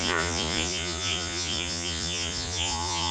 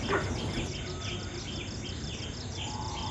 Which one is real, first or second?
second